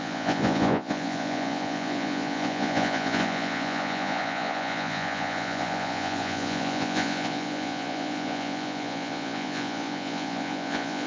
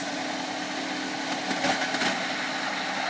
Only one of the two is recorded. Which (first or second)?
second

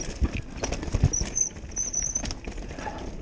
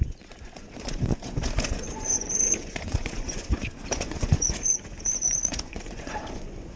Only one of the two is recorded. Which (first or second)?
first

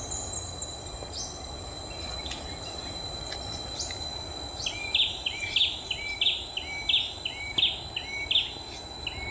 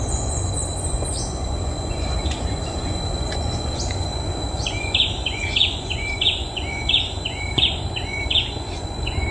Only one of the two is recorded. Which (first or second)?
first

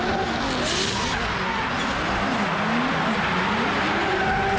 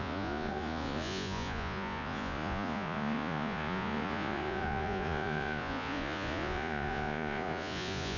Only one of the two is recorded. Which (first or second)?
first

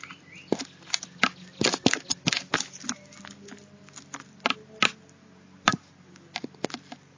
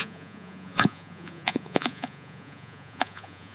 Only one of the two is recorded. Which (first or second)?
first